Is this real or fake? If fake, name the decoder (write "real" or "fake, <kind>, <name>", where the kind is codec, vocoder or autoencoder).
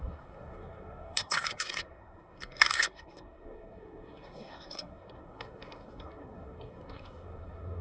fake, codec, SNAC